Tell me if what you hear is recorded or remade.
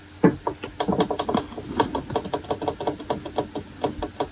recorded